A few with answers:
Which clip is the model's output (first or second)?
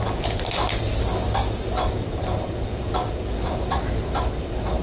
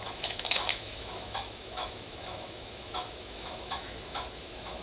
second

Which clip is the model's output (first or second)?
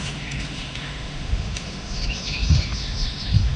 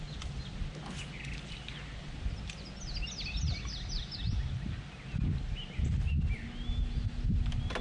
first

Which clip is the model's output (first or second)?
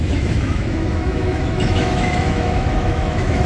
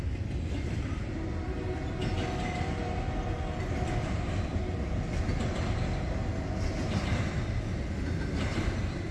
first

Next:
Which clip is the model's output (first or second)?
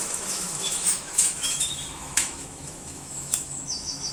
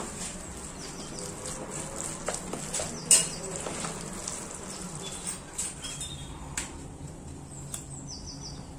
first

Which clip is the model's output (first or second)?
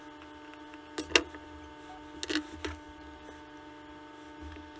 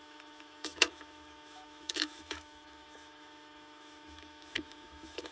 second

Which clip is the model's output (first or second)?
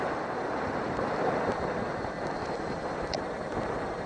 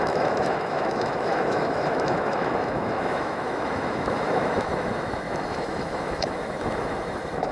second